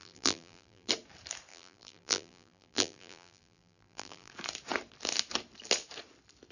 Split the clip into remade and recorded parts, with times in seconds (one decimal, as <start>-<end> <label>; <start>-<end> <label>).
0.0-0.9 remade; 0.9-1.5 recorded; 1.5-4.3 remade; 4.3-6.5 recorded